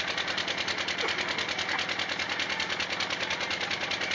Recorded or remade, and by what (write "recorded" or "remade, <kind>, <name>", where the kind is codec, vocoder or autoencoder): recorded